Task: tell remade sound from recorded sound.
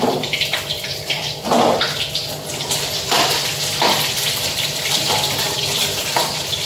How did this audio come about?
remade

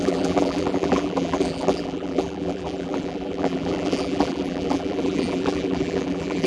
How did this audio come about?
remade